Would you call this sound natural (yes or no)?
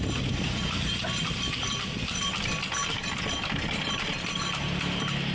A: yes